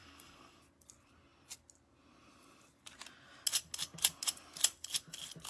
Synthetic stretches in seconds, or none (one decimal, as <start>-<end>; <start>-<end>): 0.0-0.6